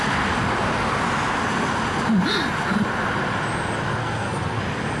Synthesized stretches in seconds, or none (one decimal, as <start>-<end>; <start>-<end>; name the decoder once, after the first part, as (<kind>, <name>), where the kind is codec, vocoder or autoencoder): 4.0-4.6 (codec, SNAC)